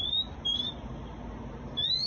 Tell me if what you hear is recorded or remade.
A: recorded